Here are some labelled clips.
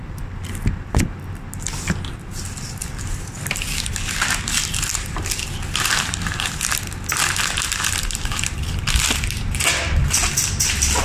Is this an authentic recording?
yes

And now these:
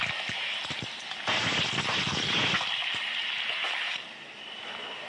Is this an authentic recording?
yes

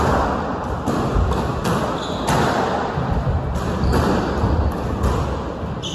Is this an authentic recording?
yes